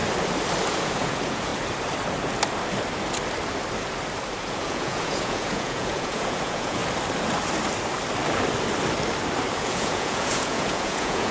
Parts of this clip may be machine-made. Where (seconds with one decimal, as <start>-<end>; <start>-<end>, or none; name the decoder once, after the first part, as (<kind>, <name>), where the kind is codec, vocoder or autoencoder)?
0.7-1.5 (vocoder, Vocos); 4.4-6.8; 9.6-11.3